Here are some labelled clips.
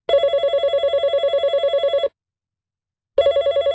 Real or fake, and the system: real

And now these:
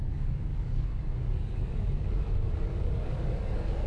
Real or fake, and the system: fake, codec, DAC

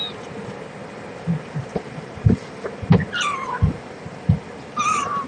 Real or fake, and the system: real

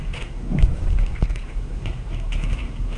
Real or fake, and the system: fake, codec, SNAC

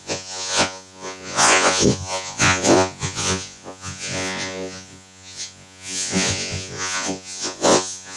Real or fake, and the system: fake, vocoder, Vocos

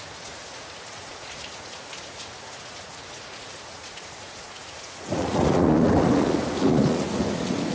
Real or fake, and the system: fake, vocoder, Vocos